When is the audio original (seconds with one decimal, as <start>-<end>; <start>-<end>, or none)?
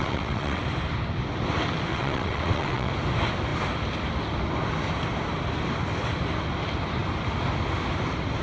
0.6-1.9; 2.9-8.4